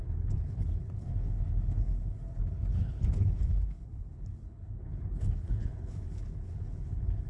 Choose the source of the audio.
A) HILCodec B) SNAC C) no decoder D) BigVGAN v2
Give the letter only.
A